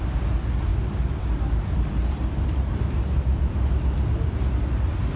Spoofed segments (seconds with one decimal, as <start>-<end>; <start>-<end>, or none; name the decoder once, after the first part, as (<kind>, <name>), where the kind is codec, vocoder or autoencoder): 0.7-3.8 (vocoder, BigVGAN v2)